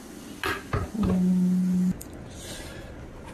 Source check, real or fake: real